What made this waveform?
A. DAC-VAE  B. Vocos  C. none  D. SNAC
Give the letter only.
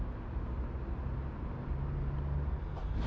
C